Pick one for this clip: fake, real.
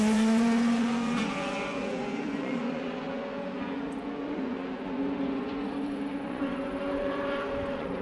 fake